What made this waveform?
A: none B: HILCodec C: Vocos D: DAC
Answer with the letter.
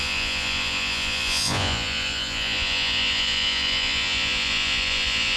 C